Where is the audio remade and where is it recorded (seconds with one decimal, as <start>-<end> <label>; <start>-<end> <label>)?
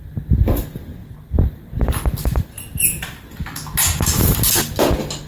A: 0.0-5.3 recorded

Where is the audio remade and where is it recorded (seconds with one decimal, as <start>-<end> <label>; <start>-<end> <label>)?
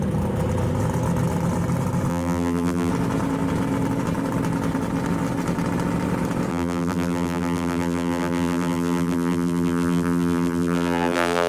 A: 0.0-2.1 recorded; 2.1-2.9 remade; 2.9-6.5 recorded; 6.5-11.5 remade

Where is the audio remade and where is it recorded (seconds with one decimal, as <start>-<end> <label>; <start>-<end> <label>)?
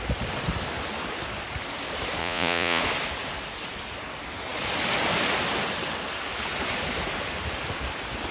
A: 0.0-2.2 recorded; 2.2-2.8 remade; 2.8-8.3 recorded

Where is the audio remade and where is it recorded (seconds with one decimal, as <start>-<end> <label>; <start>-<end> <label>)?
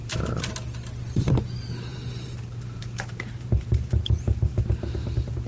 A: 0.0-1.9 recorded; 1.9-4.6 remade; 4.6-5.5 recorded